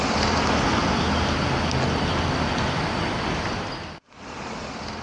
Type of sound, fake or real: real